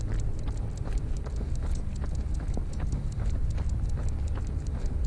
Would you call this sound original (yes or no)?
yes